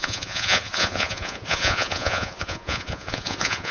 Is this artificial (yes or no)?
yes